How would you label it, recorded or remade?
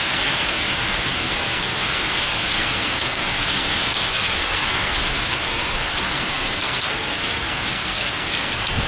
remade